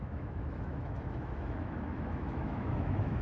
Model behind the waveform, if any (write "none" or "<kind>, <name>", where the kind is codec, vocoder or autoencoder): autoencoder, DAC-VAE